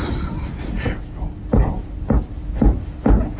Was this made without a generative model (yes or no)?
yes